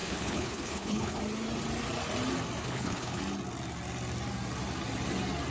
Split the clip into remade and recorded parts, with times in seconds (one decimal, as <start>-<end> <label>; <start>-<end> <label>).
0.0-1.2 remade; 1.2-2.6 recorded; 2.6-3.2 remade; 3.2-5.5 recorded